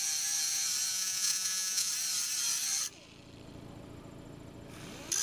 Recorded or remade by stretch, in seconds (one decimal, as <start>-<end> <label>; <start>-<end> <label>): 0.0-0.9 recorded; 0.9-1.9 remade; 1.9-5.2 recorded